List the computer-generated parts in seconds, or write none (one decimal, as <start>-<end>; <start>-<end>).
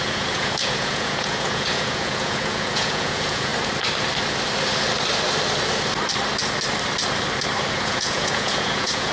0.0-3.5; 7.7-9.1